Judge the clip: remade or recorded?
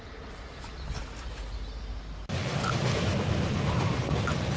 recorded